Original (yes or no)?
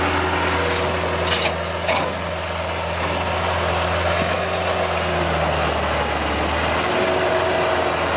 yes